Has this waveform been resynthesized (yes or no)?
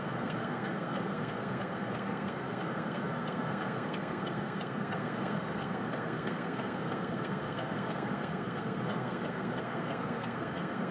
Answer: yes